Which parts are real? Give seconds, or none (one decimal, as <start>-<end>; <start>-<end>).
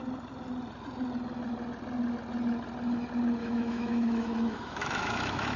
0.0-3.4